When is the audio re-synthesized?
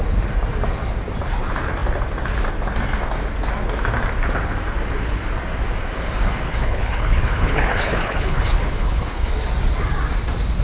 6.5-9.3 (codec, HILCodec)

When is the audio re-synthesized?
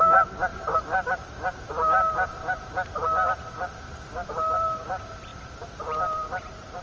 none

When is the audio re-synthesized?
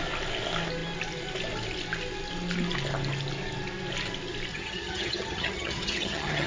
4.5-6.5 (vocoder, HiFi-GAN)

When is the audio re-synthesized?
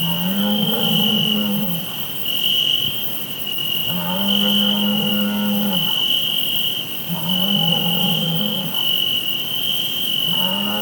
9.7-10.4 (vocoder, BigVGAN v2)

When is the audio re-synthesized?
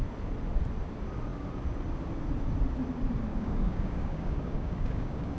3.3-5.4 (codec, DAC)